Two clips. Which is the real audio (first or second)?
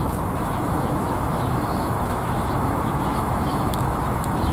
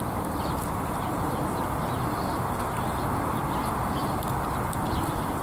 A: second